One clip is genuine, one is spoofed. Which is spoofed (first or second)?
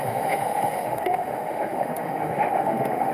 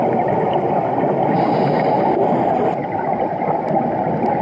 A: first